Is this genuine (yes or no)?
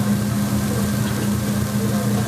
yes